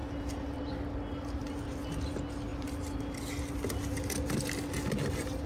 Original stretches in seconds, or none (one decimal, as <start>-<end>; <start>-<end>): 0.0-5.5